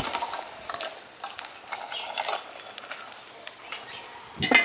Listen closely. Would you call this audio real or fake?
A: real